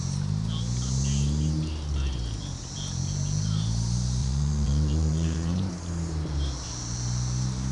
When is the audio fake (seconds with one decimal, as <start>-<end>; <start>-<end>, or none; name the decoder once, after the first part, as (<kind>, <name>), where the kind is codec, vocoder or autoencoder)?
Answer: 4.2-5.7 (vocoder, Vocos)